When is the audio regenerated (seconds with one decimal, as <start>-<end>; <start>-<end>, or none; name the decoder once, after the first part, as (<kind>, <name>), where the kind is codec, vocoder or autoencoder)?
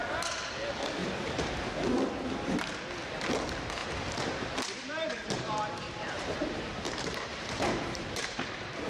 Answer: 1.0-2.7 (vocoder, BigVGAN v2); 3.8-8.9